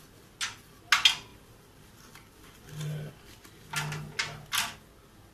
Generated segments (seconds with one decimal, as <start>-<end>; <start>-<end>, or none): 1.3-3.1